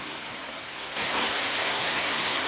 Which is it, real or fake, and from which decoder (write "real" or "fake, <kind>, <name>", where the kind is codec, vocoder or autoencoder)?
fake, codec, SNAC